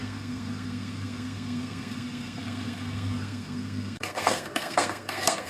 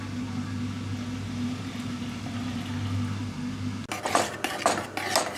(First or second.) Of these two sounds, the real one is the second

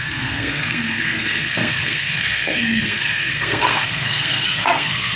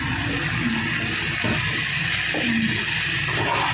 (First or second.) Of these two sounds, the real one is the second